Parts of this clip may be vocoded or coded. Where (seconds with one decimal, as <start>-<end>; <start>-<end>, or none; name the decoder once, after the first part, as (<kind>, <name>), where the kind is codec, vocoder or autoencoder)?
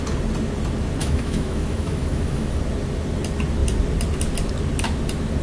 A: 1.0-2.6 (autoencoder, DAC-VAE)